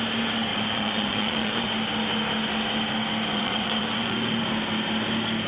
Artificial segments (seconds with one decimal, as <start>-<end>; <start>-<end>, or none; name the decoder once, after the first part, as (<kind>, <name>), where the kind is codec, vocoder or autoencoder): 0.5-1.7 (vocoder, Vocos); 3.3-4.4